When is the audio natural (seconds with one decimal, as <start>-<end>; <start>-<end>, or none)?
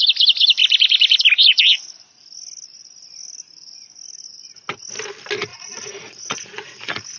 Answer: 0.0-5.5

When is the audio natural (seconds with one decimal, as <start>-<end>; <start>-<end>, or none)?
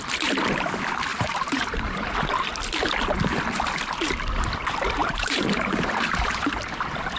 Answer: 0.0-1.1; 2.1-5.0; 6.5-7.2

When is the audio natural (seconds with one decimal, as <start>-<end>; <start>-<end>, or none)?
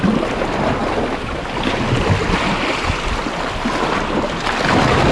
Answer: 0.0-5.1